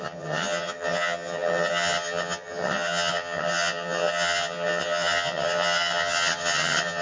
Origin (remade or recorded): remade